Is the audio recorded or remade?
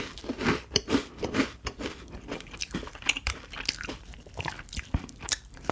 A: remade